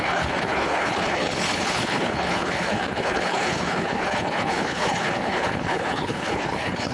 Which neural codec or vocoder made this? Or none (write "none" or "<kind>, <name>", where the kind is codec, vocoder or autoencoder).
codec, HILCodec